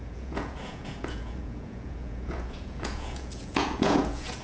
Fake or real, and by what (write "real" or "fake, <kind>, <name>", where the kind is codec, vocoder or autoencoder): fake, vocoder, Vocos